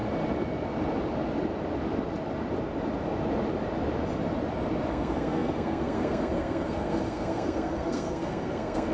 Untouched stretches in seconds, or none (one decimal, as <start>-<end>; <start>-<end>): 0.0-4.9